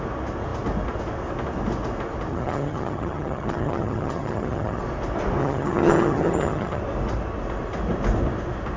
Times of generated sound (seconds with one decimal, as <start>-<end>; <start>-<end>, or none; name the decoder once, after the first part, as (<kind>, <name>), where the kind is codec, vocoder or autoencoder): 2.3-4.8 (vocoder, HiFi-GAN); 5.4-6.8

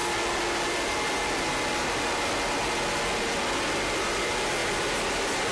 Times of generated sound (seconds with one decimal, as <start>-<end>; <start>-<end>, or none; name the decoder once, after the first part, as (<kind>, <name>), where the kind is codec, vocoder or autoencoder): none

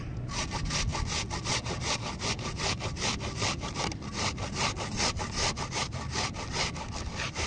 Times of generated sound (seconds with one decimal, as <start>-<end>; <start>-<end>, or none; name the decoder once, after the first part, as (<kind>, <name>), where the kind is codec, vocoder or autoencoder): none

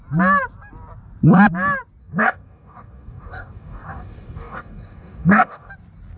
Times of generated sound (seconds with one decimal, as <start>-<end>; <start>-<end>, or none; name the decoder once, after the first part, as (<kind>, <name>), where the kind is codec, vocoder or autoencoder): 2.0-5.7 (codec, DAC)

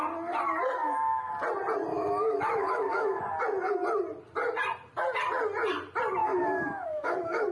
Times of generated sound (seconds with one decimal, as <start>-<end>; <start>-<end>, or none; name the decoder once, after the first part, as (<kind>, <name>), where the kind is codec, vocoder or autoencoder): 0.8-1.3 (autoencoder, DAC-VAE); 1.9-3.2; 6.2-7.5

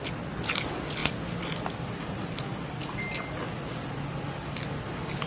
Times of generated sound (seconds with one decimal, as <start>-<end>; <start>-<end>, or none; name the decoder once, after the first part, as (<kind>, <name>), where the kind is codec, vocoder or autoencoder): none